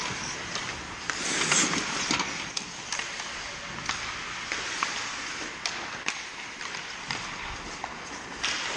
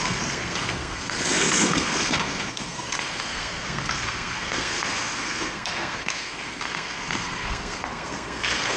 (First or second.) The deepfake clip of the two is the second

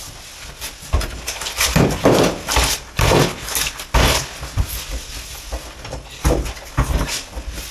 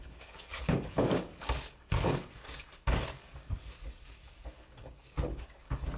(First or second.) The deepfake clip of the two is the second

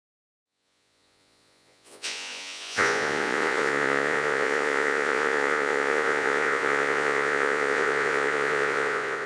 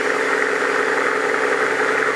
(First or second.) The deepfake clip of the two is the first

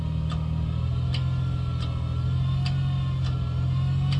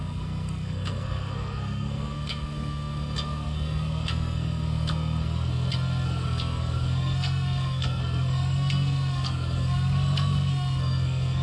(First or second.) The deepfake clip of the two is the second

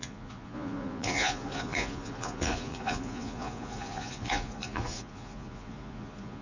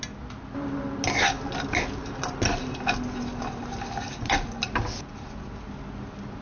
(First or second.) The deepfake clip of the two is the first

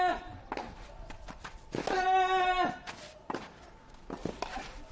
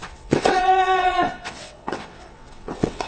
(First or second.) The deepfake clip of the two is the second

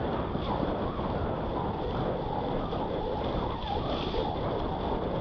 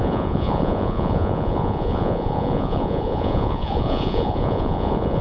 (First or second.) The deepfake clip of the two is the second